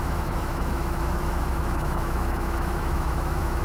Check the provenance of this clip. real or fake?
fake